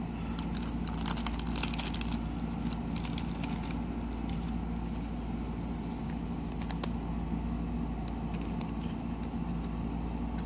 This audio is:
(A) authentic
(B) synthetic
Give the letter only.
A